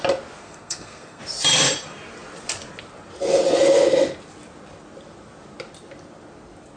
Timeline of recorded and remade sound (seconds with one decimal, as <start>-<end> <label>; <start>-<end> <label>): 0.0-0.4 recorded; 0.4-1.2 remade; 1.2-6.8 recorded